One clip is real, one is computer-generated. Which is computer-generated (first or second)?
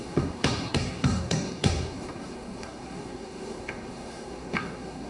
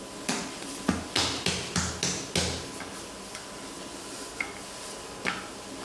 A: first